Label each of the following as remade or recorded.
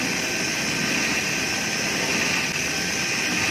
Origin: recorded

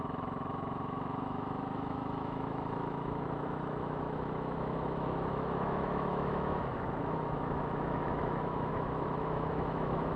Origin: remade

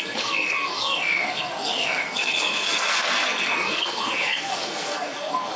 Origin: remade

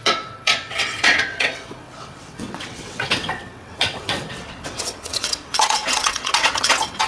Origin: remade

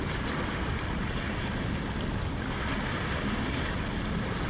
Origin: recorded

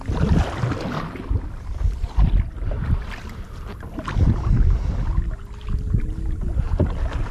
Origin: recorded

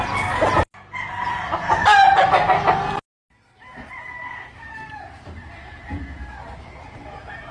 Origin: recorded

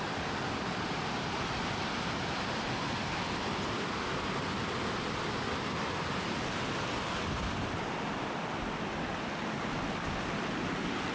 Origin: recorded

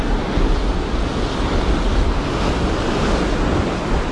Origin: recorded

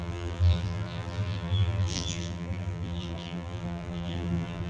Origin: remade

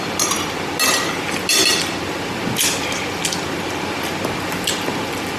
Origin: recorded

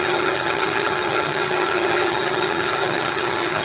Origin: remade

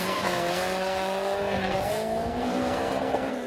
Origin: remade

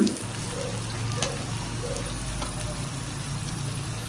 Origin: recorded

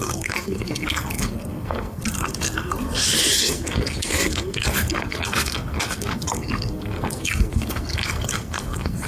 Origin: remade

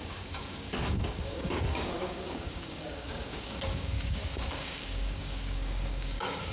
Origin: remade